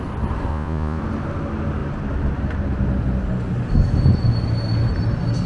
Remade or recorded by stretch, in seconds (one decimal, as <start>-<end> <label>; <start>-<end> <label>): 0.0-0.5 recorded; 0.5-1.0 remade; 1.0-5.5 recorded